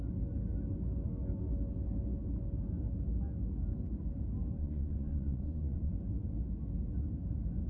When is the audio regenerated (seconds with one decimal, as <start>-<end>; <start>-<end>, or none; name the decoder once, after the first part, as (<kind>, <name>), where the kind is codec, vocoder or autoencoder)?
4.6-5.9 (vocoder, Vocos)